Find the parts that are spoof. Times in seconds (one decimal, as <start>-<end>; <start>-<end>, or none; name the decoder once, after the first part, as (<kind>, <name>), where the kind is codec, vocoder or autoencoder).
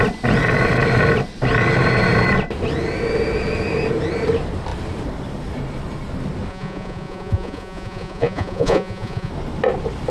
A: 6.5-9.3 (vocoder, Vocos)